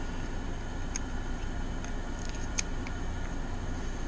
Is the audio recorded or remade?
recorded